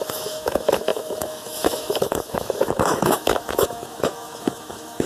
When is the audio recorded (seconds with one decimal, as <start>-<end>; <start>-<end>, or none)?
none